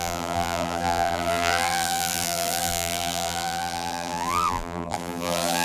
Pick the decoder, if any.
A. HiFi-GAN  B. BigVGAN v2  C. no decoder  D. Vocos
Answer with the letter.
B